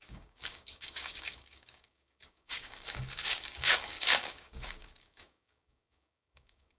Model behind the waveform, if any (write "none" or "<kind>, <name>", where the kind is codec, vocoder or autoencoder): codec, DAC